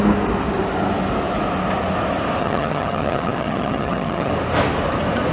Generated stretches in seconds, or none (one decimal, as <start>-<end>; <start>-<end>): 2.4-4.3